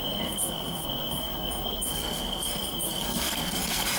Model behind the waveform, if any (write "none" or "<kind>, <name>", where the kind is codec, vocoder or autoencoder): codec, SNAC